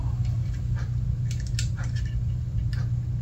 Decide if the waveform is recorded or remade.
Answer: recorded